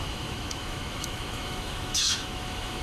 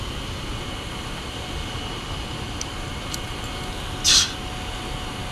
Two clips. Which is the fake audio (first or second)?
first